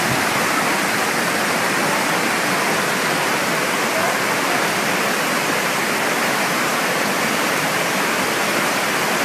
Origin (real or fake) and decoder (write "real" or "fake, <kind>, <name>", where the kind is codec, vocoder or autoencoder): real